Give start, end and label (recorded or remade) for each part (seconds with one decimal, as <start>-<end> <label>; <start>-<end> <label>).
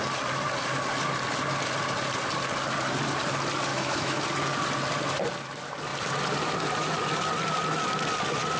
0.0-3.7 recorded; 3.7-4.2 remade; 4.2-8.6 recorded